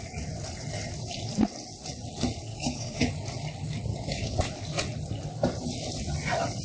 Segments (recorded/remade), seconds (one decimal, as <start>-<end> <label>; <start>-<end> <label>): 0.0-2.5 recorded; 2.5-3.1 remade; 3.1-3.9 recorded; 3.9-4.4 remade; 4.4-6.6 recorded